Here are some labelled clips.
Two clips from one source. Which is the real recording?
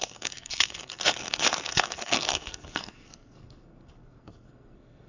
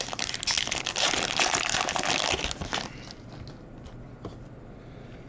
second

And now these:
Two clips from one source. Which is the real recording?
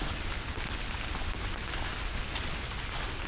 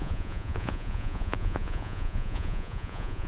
first